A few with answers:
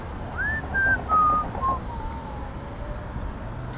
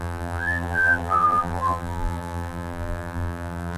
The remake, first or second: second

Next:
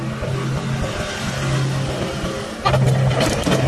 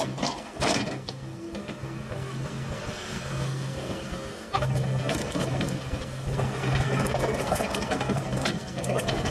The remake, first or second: second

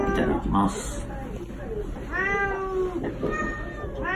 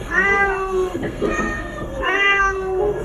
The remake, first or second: second